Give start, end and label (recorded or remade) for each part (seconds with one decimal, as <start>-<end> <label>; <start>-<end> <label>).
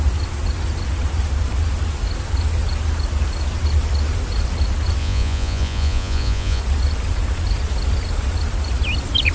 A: 0.0-5.0 recorded; 5.0-6.6 remade; 6.6-9.3 recorded